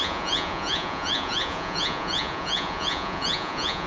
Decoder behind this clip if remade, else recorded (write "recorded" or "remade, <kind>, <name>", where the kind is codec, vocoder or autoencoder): remade, vocoder, Vocos